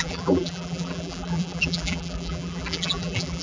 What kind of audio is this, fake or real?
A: fake